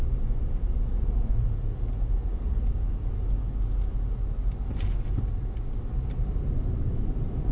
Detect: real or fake real